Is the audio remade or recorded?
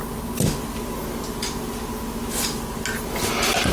recorded